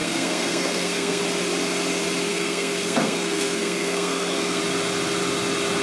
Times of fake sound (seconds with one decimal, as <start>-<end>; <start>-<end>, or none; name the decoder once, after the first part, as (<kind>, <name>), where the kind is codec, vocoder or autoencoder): 0.0-1.2 (codec, SNAC); 2.3-4.6